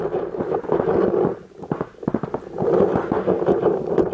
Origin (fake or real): real